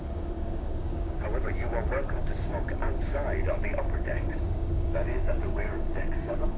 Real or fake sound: fake